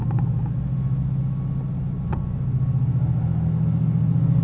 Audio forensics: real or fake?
real